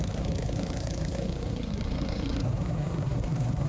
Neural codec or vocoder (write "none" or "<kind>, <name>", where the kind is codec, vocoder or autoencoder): codec, SNAC